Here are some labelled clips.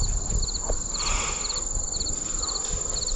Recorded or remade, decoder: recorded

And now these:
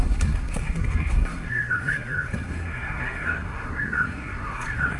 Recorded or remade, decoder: remade, codec, SNAC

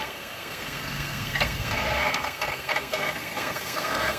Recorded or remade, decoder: remade, codec, SNAC